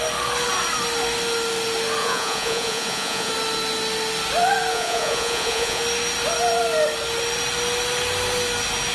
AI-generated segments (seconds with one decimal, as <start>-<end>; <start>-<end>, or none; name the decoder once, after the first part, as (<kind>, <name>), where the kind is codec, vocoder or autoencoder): 2.0-3.3 (vocoder, Vocos); 4.7-5.8